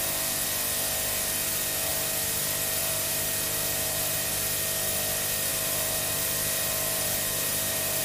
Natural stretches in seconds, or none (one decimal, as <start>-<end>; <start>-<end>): 0.0-1.9; 2.4-2.8; 4.6-5.5